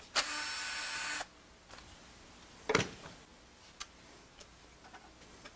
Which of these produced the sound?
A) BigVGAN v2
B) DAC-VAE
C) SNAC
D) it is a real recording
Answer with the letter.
D